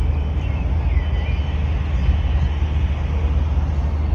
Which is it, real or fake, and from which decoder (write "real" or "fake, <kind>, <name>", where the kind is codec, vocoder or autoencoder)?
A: real